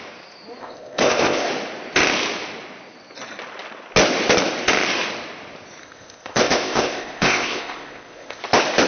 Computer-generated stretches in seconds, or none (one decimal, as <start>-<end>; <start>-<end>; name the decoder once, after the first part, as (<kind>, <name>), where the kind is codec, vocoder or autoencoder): 0.6-1.5 (codec, ZipCodec); 5.8-8.4